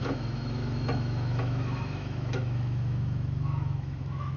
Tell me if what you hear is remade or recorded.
remade